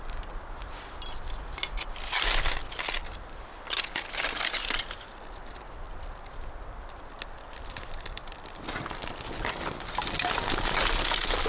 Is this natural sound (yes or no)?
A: yes